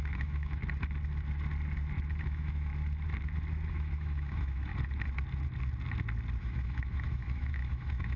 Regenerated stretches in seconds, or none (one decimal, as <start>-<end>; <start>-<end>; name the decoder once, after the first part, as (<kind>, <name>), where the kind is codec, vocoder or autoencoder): 0.0-0.6 (autoencoder, DAC-VAE); 2.2-2.7; 3.7-4.7; 6.4-8.2